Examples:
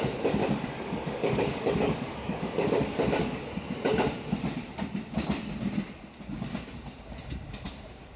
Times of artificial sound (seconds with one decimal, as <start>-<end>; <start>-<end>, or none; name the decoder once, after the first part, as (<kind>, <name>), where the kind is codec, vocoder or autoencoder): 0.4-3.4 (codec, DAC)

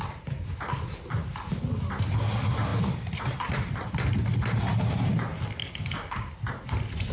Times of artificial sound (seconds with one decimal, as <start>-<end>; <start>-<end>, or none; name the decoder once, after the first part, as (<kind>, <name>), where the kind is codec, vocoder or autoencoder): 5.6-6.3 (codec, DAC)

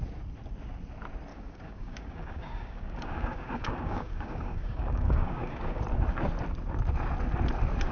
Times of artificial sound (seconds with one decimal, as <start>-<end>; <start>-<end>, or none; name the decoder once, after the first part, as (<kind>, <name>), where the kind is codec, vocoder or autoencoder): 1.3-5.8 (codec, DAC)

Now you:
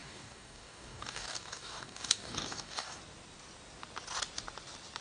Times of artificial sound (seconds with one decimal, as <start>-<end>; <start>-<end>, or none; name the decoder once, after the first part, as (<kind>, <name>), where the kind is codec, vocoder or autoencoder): 0.0-3.0 (codec, DAC)

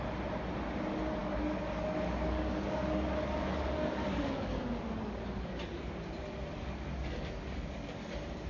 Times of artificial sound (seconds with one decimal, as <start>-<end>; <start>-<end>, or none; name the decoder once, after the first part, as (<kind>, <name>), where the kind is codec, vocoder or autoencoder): 1.2-5.8 (codec, DAC); 6.5-8.1

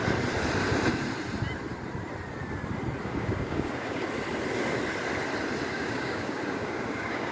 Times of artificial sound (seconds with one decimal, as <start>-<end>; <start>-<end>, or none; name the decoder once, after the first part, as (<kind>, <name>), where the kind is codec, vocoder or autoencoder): 3.0-4.0 (codec, DAC); 5.7-7.3

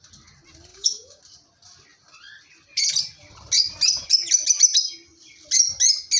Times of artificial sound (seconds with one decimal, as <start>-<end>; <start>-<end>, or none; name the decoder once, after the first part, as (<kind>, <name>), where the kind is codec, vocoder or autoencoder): 0.7-1.2 (codec, DAC)